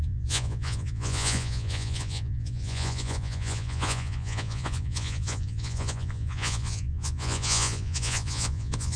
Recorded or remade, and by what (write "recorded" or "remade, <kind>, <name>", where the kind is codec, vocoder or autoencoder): remade, vocoder, Vocos